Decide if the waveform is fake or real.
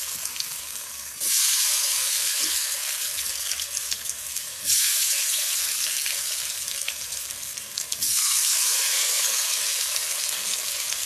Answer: fake